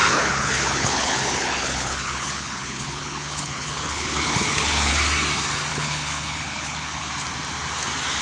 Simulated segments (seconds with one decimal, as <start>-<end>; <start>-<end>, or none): 0.0-4.9; 5.7-7.1